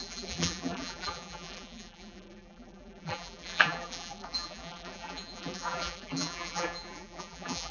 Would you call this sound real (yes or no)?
no